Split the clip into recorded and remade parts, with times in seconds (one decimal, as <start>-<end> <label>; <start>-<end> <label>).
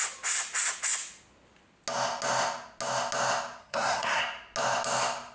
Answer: 0.0-3.6 recorded; 3.6-4.2 remade; 4.2-5.3 recorded